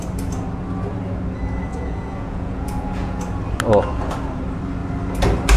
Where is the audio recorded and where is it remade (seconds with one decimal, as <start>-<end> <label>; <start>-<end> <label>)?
0.0-1.7 recorded; 1.7-3.2 remade; 3.2-5.6 recorded

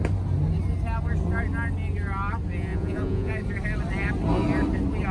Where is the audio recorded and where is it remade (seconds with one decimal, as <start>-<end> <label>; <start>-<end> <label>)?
0.0-2.7 recorded; 2.7-3.3 remade; 3.3-5.1 recorded

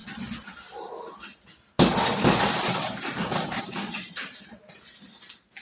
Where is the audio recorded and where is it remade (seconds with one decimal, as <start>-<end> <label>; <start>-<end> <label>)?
0.0-5.6 recorded

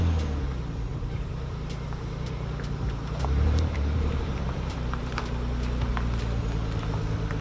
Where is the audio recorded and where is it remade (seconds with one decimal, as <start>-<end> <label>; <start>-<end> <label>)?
0.0-0.9 recorded; 0.9-5.2 remade; 5.2-7.4 recorded

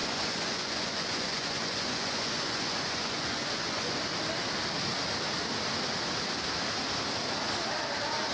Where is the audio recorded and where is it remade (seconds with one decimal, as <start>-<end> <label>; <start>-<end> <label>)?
0.0-4.0 remade; 4.0-8.3 recorded

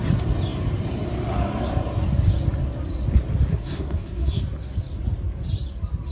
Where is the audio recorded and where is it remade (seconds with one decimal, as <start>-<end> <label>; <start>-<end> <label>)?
0.0-3.5 recorded; 3.5-4.4 remade; 4.4-6.1 recorded

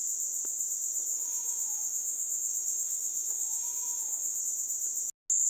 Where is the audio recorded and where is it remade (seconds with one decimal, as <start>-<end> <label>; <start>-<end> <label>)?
0.0-1.1 recorded; 1.1-4.4 remade; 4.4-5.5 recorded

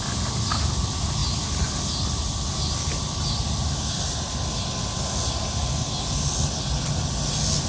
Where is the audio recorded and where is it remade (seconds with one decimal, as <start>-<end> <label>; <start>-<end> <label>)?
0.0-7.7 recorded